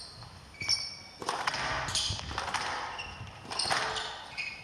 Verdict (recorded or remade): recorded